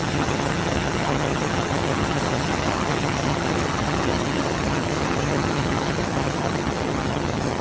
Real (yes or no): no